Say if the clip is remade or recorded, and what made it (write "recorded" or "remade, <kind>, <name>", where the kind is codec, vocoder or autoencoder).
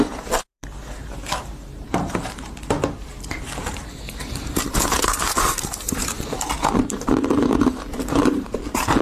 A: remade, vocoder, BigVGAN v2